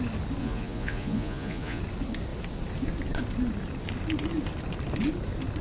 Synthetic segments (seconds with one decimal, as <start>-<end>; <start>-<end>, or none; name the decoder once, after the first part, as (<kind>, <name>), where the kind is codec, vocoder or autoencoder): 0.4-1.8 (vocoder, Vocos)